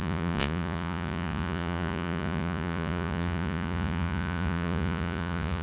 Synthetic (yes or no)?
yes